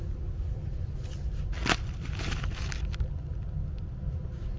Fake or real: real